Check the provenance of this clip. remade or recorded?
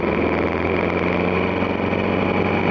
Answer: recorded